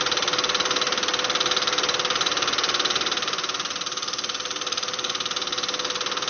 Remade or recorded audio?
recorded